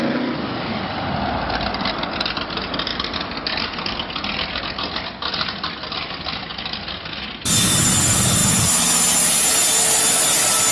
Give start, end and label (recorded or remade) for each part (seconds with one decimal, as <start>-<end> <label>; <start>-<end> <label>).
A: 0.0-10.7 recorded

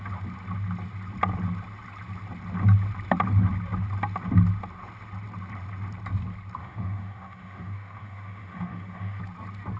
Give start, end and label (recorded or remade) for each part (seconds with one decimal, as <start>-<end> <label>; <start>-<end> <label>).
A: 0.0-6.6 recorded; 6.6-9.2 remade; 9.2-9.8 recorded

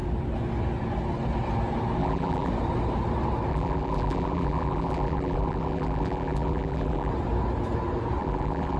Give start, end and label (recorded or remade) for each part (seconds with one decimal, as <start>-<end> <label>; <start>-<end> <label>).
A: 0.0-2.0 recorded; 2.0-2.5 remade; 2.5-3.5 recorded; 3.5-7.1 remade; 7.1-8.2 recorded; 8.2-8.8 remade

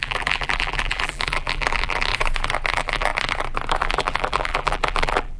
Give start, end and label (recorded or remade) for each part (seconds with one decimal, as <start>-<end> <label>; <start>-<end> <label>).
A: 0.0-2.1 remade; 2.1-2.7 recorded; 2.7-3.1 remade; 3.1-3.8 recorded; 3.8-5.4 remade

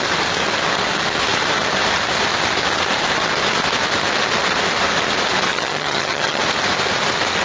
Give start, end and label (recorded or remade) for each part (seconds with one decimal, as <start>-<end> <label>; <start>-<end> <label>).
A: 0.0-5.5 recorded; 5.5-6.4 remade; 6.4-7.4 recorded

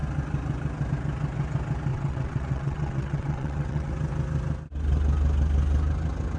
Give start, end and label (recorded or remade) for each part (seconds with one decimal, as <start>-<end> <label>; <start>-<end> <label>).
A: 0.0-1.9 recorded; 1.9-3.9 remade; 3.9-6.4 recorded

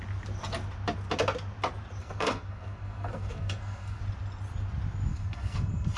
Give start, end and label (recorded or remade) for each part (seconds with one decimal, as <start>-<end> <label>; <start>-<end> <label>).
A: 0.0-2.0 recorded; 2.0-4.0 remade; 4.0-5.1 recorded; 5.1-6.0 remade

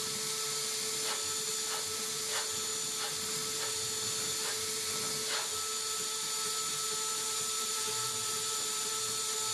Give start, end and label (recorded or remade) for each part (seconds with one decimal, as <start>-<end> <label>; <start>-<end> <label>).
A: 0.0-7.1 recorded; 7.1-9.0 remade; 9.0-9.5 recorded